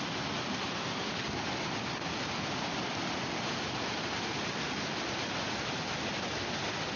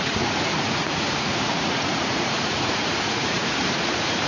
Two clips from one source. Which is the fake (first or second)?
second